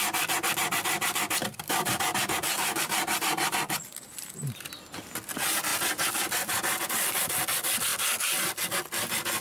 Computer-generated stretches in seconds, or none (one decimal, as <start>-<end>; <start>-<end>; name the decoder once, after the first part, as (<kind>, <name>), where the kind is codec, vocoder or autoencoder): 1.4-4.7 (vocoder, BigVGAN v2)